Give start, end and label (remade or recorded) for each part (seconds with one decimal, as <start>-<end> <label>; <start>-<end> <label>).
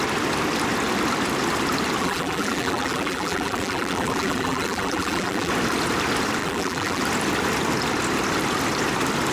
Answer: 0.0-2.0 recorded; 2.0-5.5 remade; 5.5-6.4 recorded; 6.4-7.0 remade; 7.0-9.3 recorded